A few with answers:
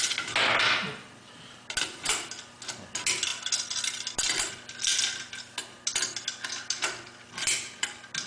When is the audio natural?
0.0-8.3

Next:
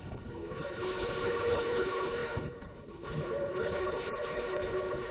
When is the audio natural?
none

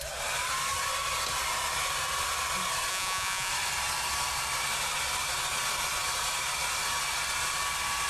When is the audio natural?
0.0-2.9; 3.5-8.1